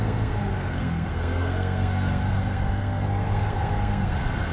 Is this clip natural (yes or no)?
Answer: no